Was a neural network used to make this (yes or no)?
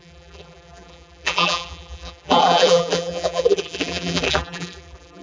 yes